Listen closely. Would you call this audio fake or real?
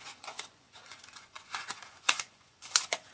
fake